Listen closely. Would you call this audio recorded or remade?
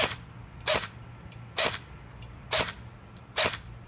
recorded